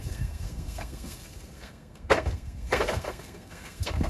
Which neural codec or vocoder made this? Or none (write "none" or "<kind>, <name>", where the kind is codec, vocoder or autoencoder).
codec, SNAC